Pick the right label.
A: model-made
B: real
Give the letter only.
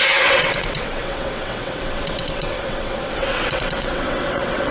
A